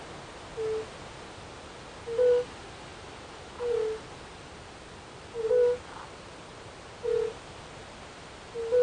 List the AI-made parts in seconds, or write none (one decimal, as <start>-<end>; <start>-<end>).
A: none